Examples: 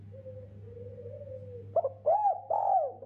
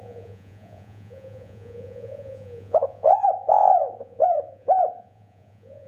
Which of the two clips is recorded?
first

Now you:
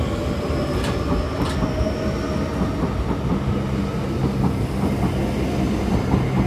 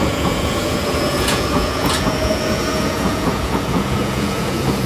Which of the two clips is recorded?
first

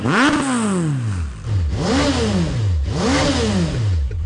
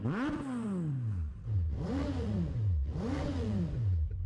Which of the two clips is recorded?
first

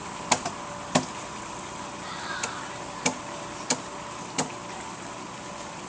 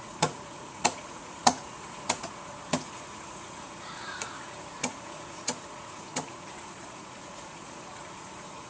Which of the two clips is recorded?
first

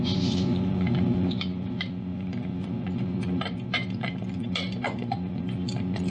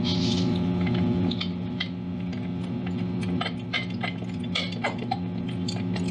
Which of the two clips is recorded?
second